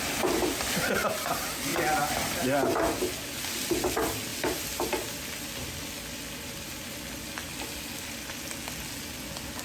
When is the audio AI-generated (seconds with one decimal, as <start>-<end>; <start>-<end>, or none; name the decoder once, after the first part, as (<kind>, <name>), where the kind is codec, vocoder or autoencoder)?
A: none